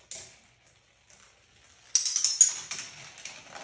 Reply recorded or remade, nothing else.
recorded